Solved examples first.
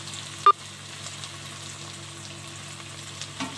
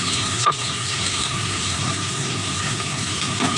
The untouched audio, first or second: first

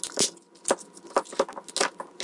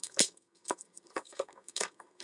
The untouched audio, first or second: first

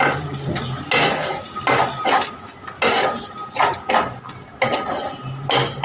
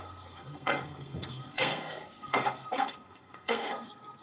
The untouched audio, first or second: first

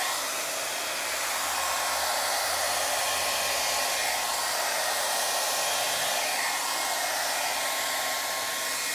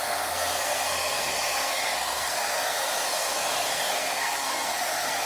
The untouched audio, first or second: first